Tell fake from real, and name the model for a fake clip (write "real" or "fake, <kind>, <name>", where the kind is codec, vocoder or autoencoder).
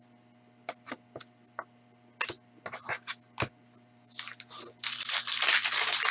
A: real